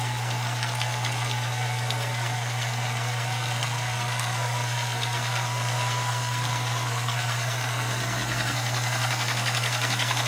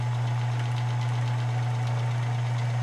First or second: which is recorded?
second